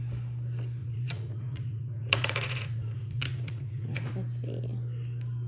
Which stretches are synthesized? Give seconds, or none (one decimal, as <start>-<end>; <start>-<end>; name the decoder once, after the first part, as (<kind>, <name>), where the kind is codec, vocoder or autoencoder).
0.8-4.1 (vocoder, Vocos)